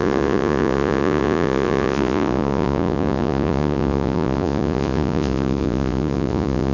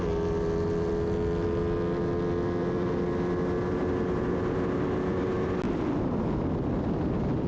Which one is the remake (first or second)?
first